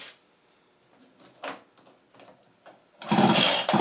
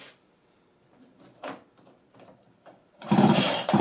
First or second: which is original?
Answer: first